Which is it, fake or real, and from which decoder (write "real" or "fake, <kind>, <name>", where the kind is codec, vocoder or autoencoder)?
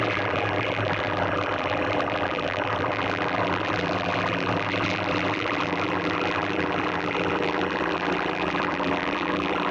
fake, vocoder, BigVGAN v2